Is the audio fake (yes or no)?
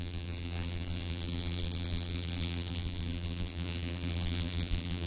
yes